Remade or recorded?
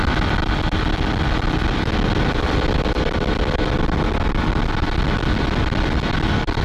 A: recorded